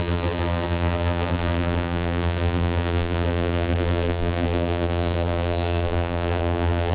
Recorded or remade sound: remade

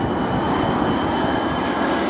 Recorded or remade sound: recorded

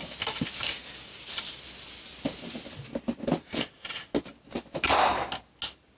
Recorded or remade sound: recorded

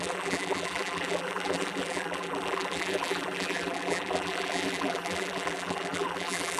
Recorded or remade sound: remade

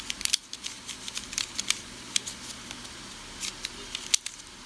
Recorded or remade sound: recorded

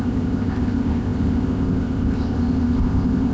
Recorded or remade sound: remade